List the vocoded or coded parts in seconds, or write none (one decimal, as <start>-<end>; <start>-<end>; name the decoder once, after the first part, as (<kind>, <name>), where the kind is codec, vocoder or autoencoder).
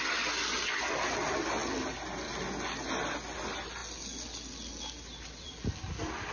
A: none